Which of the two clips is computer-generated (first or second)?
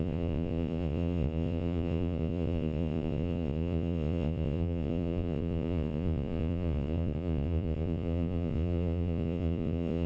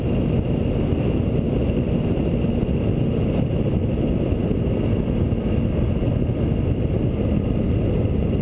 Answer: first